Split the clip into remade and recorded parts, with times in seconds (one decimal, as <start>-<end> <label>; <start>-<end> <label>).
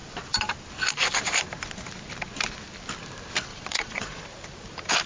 0.0-3.5 recorded; 3.5-4.2 remade; 4.2-5.1 recorded